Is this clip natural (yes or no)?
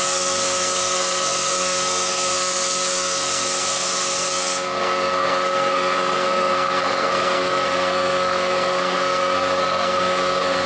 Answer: no